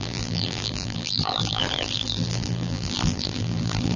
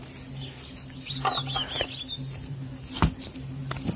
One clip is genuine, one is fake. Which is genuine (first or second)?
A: second